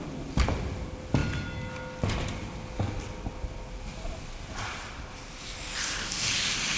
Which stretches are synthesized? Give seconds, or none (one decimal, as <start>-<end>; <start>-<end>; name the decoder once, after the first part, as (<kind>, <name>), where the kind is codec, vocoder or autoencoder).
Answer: none